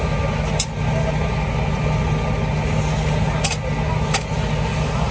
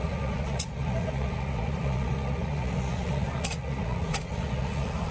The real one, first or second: first